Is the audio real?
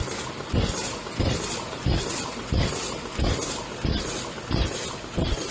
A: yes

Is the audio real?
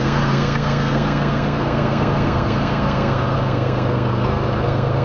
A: no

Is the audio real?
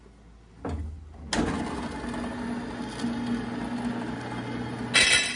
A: yes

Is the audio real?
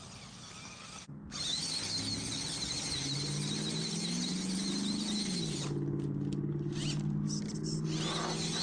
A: yes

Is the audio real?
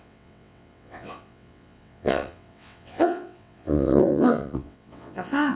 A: no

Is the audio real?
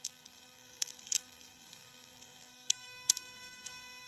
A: no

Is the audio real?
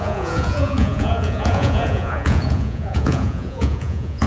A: no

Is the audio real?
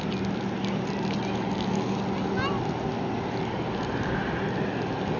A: yes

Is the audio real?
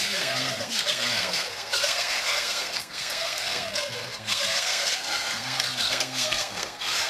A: no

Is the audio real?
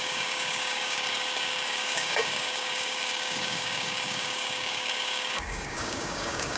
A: no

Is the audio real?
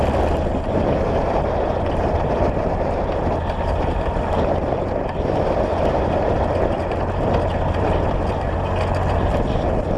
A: yes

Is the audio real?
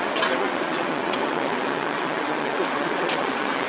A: no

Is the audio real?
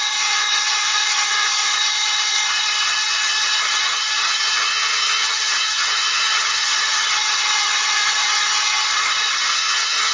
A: no